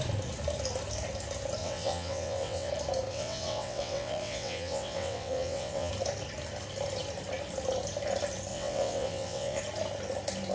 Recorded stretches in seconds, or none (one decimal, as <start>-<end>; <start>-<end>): 0.0-1.6; 2.7-3.1; 5.9-8.5; 9.6-10.5